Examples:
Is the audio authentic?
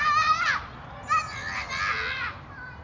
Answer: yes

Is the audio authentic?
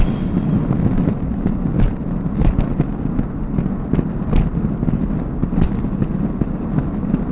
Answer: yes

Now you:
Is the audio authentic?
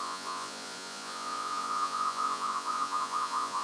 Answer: no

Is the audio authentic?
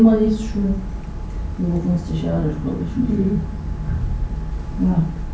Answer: yes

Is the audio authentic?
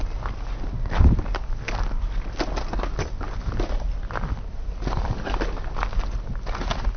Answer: yes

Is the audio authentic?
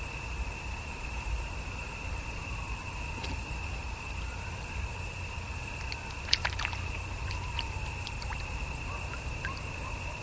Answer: no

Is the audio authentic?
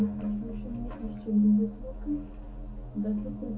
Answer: yes